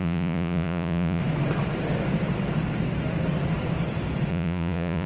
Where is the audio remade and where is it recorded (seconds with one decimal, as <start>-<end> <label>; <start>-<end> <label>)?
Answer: 0.0-1.2 remade; 1.2-4.3 recorded; 4.3-5.1 remade